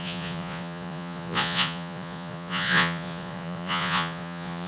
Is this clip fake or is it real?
fake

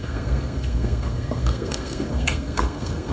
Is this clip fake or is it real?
fake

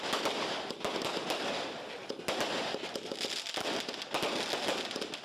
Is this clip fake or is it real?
real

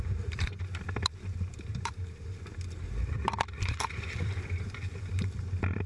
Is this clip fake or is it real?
fake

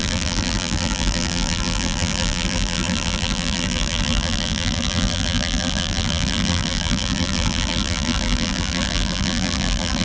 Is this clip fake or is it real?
fake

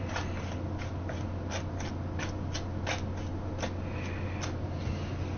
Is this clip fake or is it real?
real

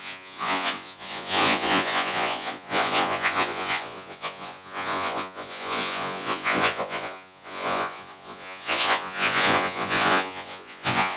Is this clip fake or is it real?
fake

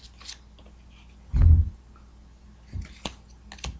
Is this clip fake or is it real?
real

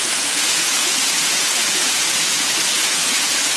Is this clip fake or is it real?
fake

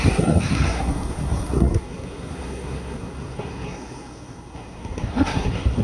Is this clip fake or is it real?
fake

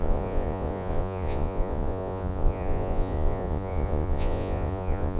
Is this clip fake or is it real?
fake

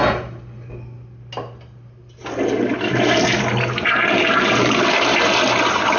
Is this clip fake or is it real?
real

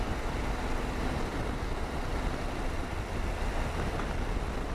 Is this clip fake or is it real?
real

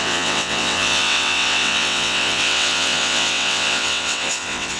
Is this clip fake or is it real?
fake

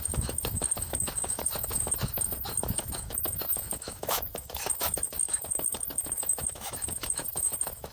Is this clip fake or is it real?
fake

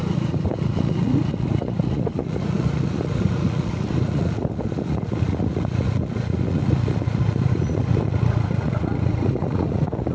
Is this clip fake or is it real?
fake